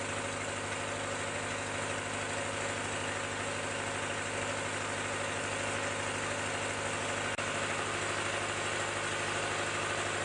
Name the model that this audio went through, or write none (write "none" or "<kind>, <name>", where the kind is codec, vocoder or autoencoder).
none